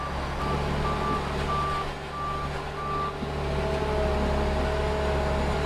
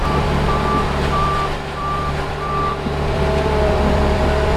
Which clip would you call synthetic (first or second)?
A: second